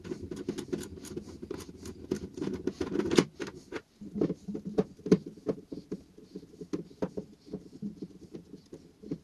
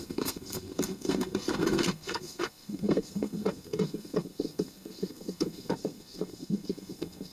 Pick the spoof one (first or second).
second